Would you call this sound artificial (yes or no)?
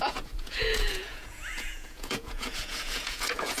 yes